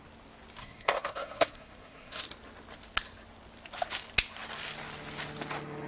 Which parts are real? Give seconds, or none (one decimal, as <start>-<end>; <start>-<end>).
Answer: 0.0-0.6; 2.2-5.9